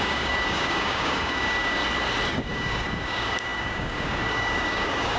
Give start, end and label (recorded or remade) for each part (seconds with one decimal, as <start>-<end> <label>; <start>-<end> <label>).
0.0-1.8 remade; 1.8-2.3 recorded; 2.3-5.2 remade